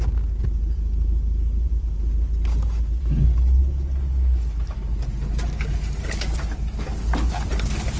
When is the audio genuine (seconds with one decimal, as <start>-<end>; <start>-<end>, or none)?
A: 0.0-8.0